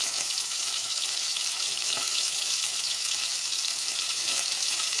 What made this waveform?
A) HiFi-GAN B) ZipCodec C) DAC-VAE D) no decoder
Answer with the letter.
C